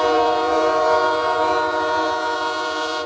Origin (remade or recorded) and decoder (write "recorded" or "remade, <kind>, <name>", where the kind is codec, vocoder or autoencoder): remade, vocoder, Vocos